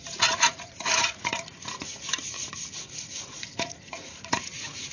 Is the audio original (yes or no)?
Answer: no